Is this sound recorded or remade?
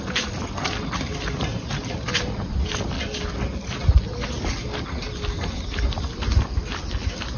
recorded